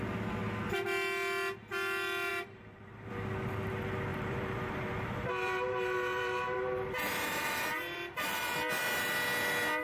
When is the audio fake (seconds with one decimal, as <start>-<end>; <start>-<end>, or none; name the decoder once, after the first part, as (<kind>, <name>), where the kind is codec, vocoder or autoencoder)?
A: 2.3-3.1 (vocoder, BigVGAN v2); 4.1-8.7